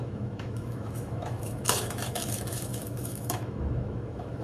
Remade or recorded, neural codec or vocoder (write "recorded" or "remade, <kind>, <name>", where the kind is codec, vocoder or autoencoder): remade, autoencoder, DAC-VAE